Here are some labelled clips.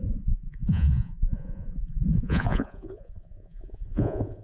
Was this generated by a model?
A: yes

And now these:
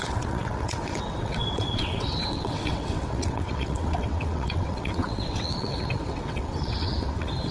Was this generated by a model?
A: yes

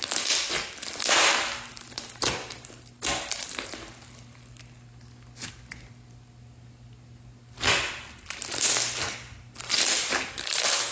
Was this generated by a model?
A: no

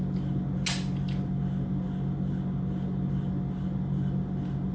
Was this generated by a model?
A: no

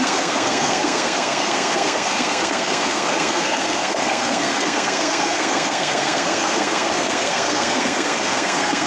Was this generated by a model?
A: yes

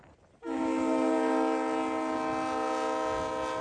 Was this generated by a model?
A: no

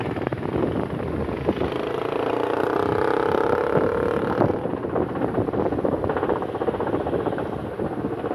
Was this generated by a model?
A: no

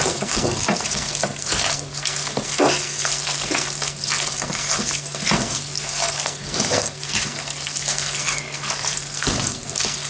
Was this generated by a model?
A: yes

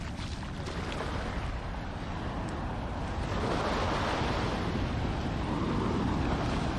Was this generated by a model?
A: no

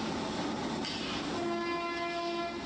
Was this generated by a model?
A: no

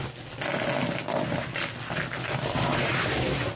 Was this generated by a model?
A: no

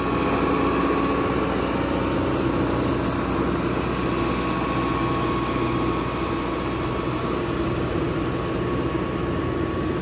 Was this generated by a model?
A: no